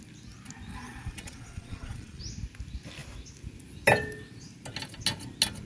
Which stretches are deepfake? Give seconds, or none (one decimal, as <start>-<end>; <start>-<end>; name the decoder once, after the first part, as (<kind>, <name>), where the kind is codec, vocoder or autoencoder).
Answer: 0.7-2.2 (vocoder, Vocos)